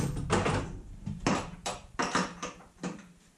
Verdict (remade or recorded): remade